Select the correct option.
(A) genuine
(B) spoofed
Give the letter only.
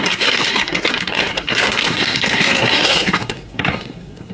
B